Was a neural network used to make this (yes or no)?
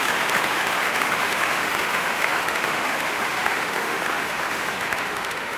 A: yes